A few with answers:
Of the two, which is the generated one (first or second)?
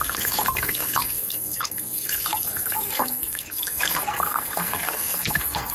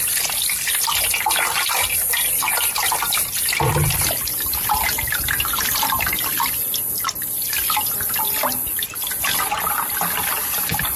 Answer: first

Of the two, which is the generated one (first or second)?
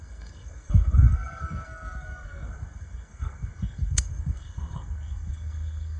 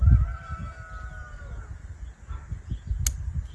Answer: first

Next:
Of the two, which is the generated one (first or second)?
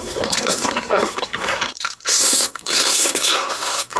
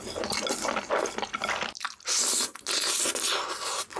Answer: first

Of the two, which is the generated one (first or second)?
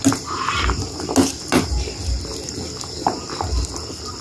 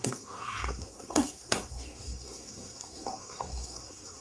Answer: second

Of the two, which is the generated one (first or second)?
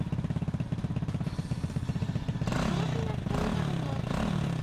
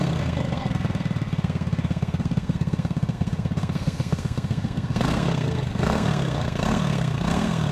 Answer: second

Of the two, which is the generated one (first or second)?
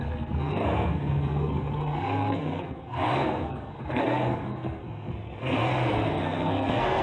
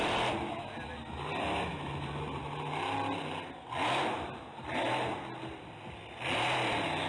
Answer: first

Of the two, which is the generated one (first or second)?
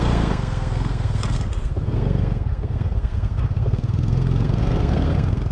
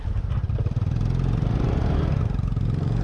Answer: first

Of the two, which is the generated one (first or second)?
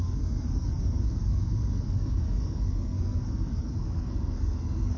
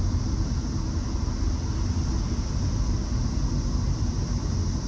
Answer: first